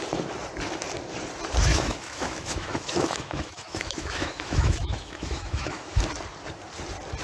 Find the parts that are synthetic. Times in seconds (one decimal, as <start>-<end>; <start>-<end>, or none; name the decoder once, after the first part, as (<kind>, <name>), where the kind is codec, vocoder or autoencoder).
1.7-6.0 (autoencoder, DAC-VAE)